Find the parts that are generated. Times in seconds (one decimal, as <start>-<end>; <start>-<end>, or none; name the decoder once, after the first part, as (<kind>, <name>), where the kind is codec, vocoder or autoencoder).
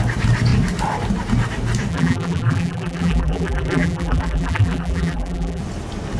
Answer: 1.9-5.6 (vocoder, BigVGAN v2)